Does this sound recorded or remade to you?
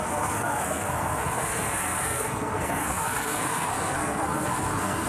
remade